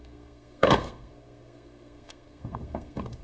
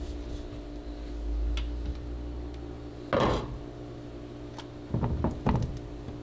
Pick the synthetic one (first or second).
first